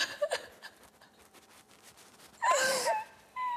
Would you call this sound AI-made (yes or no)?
no